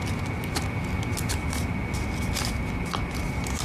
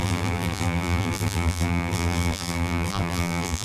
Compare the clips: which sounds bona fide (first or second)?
first